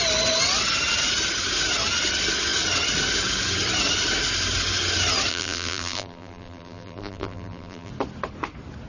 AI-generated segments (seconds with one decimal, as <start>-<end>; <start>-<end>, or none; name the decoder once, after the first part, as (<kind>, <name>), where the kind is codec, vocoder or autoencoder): 5.3-7.9 (vocoder, BigVGAN v2)